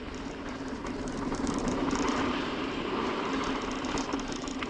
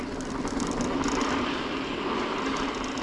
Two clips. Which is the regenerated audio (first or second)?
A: first